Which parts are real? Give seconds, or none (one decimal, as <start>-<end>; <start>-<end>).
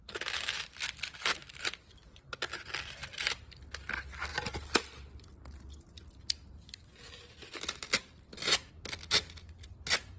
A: 0.0-10.2